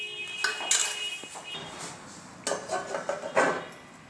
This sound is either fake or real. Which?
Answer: real